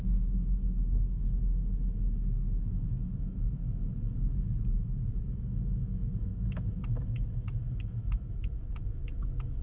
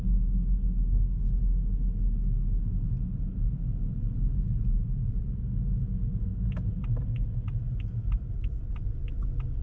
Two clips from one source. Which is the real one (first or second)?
second